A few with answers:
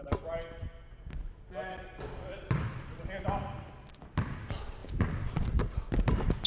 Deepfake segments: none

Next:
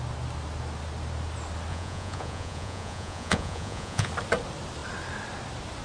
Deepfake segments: 1.7-4.1 (vocoder, Vocos)

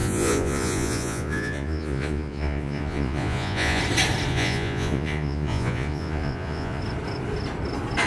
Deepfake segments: 0.0-3.8 (vocoder, Vocos); 4.3-6.8